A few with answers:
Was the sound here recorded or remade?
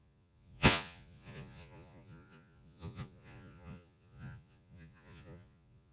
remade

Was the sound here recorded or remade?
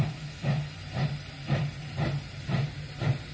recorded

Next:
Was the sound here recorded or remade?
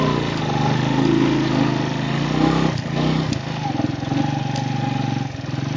recorded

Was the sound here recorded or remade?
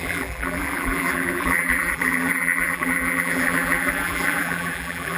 remade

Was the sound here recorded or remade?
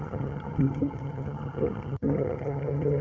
remade